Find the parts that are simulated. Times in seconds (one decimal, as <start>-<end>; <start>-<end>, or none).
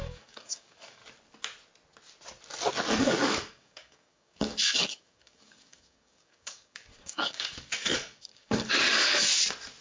0.0-1.0; 3.0-9.3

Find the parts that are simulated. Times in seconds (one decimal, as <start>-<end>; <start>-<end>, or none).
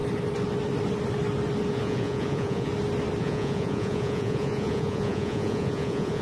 1.7-2.7; 3.2-6.2